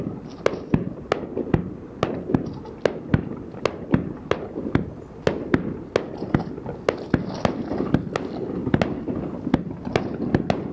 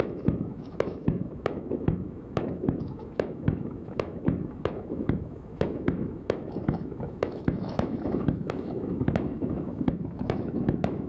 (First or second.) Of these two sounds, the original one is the first